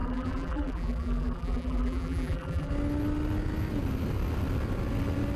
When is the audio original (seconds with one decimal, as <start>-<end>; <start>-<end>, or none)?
2.7-5.4